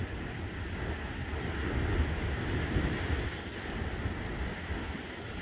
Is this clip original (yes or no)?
yes